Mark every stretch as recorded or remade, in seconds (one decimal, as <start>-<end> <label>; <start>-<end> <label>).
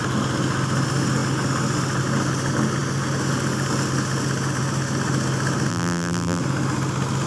0.0-5.7 recorded; 5.7-6.4 remade; 6.4-7.3 recorded